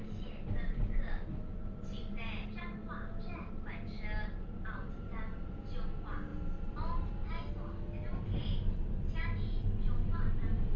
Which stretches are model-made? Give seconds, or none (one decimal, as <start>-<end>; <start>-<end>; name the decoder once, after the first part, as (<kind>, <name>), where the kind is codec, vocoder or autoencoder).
none